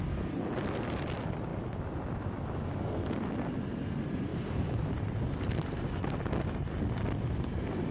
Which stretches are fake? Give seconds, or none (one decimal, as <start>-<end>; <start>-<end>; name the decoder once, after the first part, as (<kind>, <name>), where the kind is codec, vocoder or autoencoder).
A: 4.3-5.3 (vocoder, BigVGAN v2)